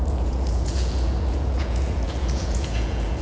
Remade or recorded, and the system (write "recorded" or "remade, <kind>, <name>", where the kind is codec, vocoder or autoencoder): remade, vocoder, Vocos